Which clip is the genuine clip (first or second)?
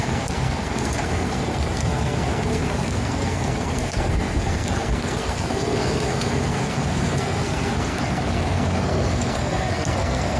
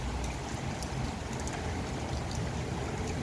second